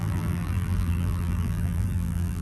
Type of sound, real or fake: fake